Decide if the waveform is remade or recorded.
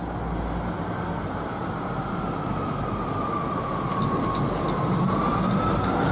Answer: recorded